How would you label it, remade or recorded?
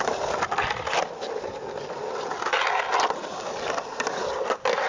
recorded